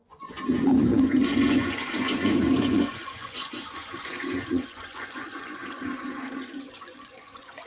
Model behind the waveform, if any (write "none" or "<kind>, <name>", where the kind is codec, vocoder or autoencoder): vocoder, Vocos